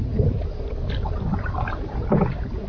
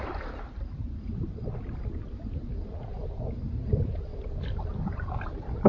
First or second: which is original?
first